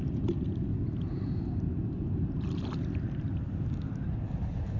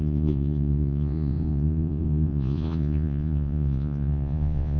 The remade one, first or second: second